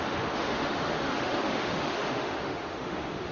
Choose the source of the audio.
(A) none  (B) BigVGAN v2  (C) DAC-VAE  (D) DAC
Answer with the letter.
C